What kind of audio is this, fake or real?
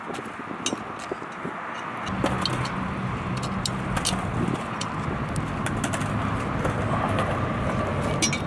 real